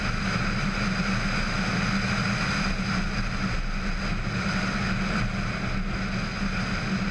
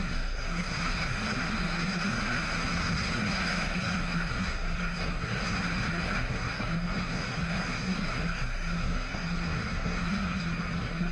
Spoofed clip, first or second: second